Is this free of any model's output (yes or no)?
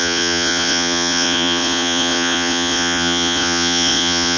no